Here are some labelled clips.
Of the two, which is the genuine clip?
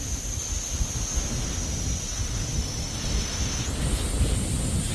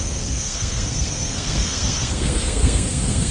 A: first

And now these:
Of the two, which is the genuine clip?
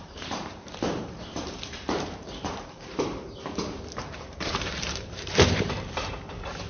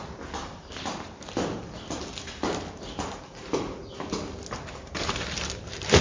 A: second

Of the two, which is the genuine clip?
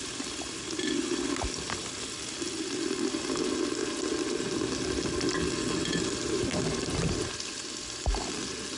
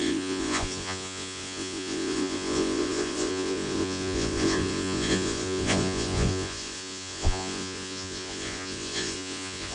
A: first